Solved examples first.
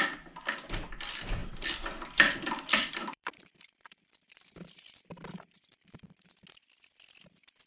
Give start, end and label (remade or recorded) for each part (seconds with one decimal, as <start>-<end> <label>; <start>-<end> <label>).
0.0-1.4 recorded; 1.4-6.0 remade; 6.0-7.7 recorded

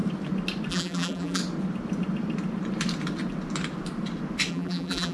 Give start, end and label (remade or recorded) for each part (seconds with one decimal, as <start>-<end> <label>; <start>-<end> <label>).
0.0-0.7 recorded; 0.7-1.4 remade; 1.4-4.5 recorded; 4.5-5.1 remade

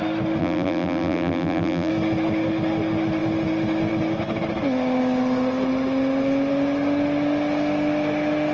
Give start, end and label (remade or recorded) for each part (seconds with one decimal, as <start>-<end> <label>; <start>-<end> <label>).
0.0-0.4 recorded; 0.4-1.9 remade; 1.9-8.5 recorded

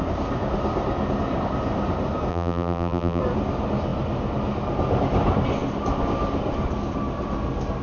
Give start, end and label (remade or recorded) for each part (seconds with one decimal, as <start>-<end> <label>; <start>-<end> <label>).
0.0-2.3 recorded; 2.3-3.2 remade; 3.2-7.8 recorded

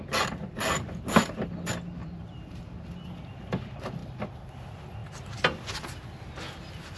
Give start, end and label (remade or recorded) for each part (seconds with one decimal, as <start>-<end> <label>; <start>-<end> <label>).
0.0-2.0 recorded; 2.0-2.9 remade; 2.9-4.0 recorded; 4.0-4.5 remade; 4.5-7.0 recorded